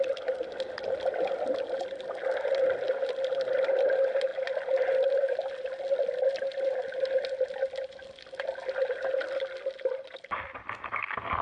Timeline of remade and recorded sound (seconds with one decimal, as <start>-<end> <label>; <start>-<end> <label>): 0.0-11.4 recorded